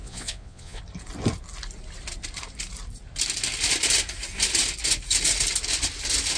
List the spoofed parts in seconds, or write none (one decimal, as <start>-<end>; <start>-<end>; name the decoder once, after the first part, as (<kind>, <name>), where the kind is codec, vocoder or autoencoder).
0.0-0.8 (vocoder, Vocos)